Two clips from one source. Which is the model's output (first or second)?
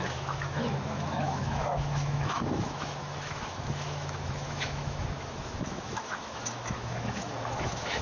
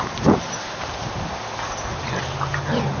first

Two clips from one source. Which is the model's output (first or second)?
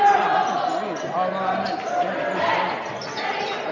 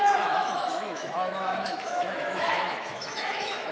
second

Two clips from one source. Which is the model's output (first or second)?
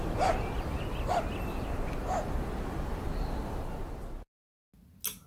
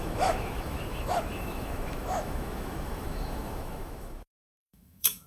second